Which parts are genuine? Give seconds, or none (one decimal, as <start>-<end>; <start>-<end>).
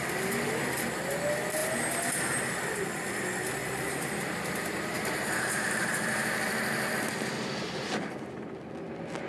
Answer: 0.0-9.3